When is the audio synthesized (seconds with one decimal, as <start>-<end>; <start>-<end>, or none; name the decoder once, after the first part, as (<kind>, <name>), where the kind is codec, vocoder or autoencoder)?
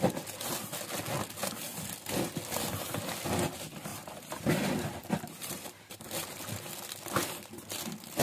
3.9-6.4 (vocoder, BigVGAN v2)